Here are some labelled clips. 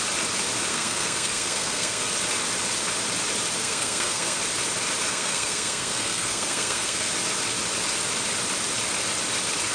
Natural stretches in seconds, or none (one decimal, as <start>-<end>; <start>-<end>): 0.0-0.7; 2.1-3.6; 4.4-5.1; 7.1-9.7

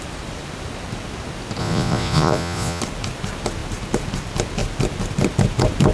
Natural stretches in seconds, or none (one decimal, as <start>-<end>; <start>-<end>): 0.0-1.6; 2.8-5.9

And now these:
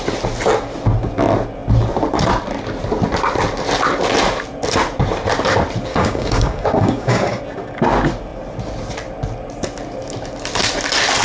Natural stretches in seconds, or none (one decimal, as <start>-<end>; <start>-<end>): 0.0-5.9; 7.4-11.2